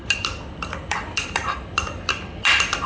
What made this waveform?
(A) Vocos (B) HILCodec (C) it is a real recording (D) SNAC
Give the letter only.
C